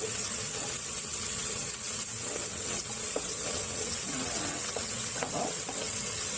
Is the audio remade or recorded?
remade